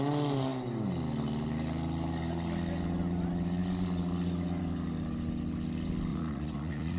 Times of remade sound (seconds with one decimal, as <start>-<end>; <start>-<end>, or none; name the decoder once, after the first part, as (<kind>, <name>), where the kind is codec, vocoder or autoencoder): 6.1-7.0 (vocoder, Vocos)